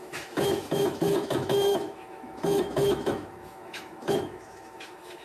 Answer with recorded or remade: remade